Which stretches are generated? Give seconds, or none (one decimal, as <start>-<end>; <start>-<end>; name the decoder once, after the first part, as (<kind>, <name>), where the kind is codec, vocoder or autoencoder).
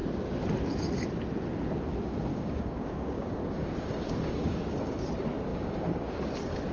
2.3-5.1 (codec, DAC); 5.5-6.1